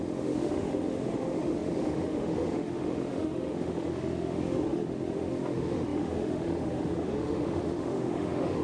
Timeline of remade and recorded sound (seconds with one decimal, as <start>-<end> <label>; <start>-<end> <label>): 0.0-8.6 remade